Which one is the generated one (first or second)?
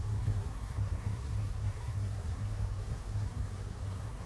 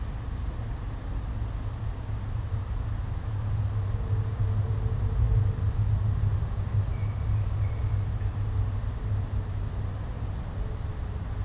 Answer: first